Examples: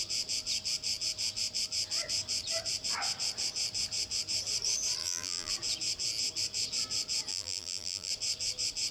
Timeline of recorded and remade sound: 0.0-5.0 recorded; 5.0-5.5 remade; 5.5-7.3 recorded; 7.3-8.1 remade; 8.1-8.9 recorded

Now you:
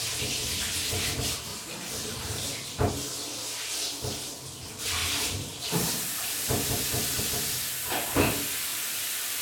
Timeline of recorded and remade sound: 0.0-1.5 recorded; 1.5-2.9 remade; 2.9-5.0 recorded; 5.0-7.2 remade; 7.2-8.7 recorded; 8.7-9.4 remade